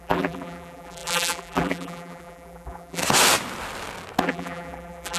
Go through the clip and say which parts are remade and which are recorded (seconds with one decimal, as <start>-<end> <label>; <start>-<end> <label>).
0.0-3.0 remade; 3.0-4.2 recorded; 4.2-5.2 remade